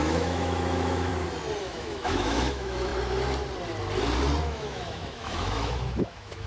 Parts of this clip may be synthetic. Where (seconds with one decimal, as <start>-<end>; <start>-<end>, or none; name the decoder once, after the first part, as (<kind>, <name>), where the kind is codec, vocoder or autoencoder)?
0.0-1.1 (autoencoder, DAC-VAE); 1.6-2.9; 4.4-6.5